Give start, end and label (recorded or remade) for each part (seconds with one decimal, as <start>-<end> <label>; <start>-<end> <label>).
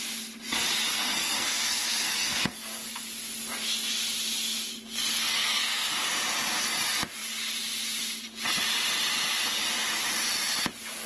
0.0-0.9 recorded; 0.9-3.0 remade; 3.0-5.1 recorded; 5.1-5.9 remade; 5.9-11.1 recorded